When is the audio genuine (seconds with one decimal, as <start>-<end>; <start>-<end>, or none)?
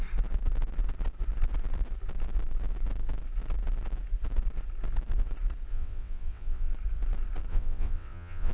0.0-5.7; 6.7-7.5